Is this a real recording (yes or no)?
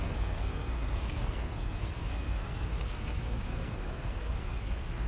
no